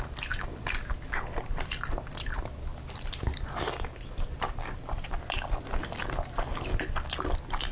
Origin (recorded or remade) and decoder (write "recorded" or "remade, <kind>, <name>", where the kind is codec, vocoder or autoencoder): recorded